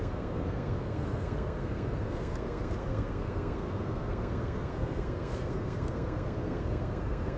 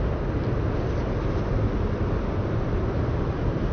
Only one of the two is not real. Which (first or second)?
first